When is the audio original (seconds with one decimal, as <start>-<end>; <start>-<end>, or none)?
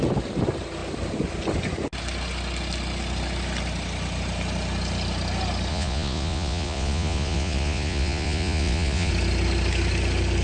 0.0-5.7; 9.1-10.4